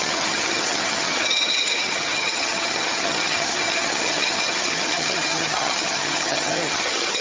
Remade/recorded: remade